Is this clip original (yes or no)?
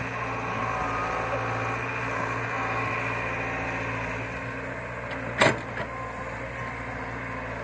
yes